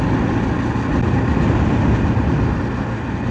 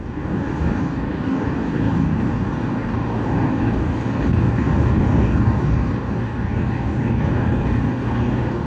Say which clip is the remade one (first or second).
second